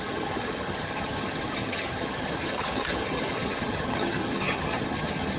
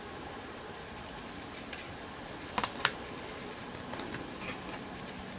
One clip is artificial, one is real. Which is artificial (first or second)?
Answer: first